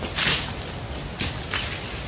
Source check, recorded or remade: recorded